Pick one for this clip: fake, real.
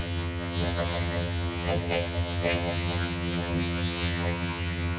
fake